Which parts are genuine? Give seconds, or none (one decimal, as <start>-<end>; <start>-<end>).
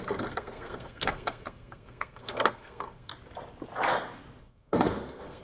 3.1-4.4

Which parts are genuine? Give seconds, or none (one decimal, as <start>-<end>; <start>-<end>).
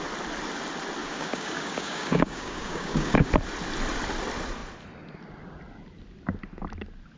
0.0-1.0; 3.3-7.2